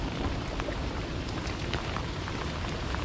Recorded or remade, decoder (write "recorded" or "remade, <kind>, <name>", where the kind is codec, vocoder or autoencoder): remade, vocoder, BigVGAN v2